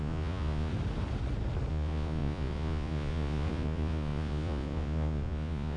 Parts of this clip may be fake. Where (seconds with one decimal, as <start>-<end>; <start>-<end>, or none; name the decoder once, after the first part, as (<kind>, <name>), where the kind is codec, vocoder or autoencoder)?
0.0-0.7 (vocoder, Vocos); 1.7-5.8